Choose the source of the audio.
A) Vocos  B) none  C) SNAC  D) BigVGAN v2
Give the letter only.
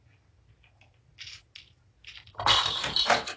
B